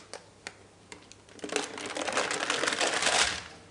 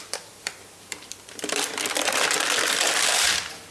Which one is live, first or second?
first